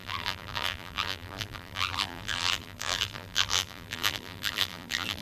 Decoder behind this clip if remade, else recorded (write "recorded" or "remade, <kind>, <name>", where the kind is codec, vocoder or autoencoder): remade, vocoder, BigVGAN v2